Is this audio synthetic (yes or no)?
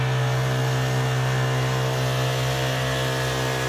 no